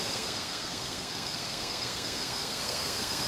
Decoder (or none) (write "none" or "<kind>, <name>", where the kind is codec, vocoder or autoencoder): codec, SNAC